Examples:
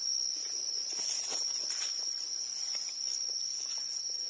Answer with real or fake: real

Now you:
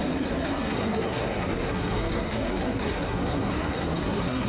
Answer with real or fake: fake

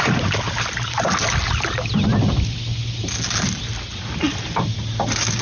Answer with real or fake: real